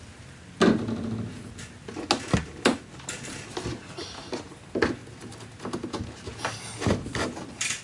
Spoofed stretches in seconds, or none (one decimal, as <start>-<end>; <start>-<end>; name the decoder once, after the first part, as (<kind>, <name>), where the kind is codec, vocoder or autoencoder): none